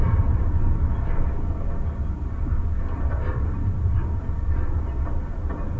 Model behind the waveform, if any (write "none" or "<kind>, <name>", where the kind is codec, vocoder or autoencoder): none